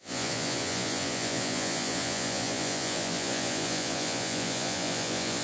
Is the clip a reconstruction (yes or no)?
yes